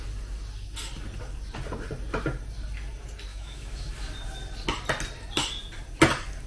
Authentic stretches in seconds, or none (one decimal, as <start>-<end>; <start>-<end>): 0.0-3.3; 3.9-6.5